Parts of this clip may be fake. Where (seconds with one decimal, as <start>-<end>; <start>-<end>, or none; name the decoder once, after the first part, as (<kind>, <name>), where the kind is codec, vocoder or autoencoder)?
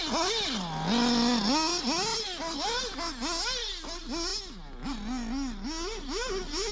none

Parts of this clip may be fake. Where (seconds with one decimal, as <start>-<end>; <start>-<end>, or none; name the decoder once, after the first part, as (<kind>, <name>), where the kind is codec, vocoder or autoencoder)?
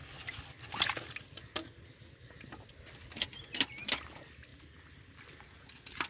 none